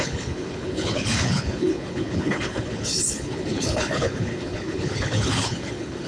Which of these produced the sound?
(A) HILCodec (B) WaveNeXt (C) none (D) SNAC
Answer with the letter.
A